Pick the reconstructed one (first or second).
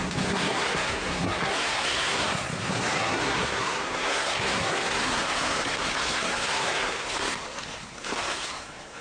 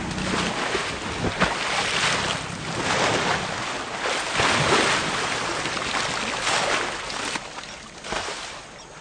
first